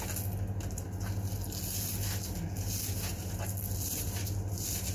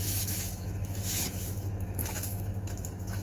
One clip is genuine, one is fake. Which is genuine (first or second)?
first